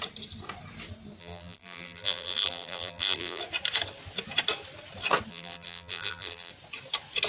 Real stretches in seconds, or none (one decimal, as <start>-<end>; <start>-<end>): 0.0-1.2; 3.4-5.3; 6.5-7.3